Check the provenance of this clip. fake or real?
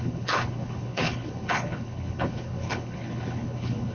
fake